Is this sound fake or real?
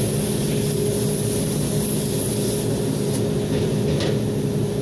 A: real